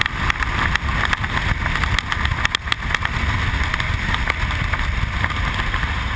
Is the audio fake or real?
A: real